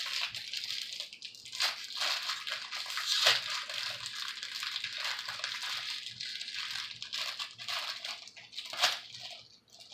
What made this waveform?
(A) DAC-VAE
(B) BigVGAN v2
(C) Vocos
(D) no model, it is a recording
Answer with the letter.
D